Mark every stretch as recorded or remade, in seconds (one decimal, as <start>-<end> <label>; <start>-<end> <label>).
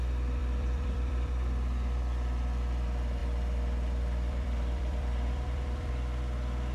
0.0-0.4 recorded; 0.4-1.3 remade; 1.3-3.2 recorded; 3.2-5.9 remade; 5.9-6.7 recorded